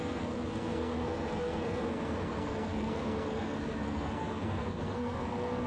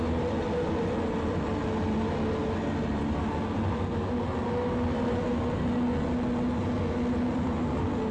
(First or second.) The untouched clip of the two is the second